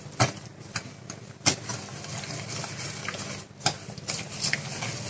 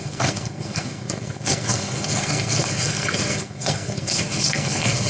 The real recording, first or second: first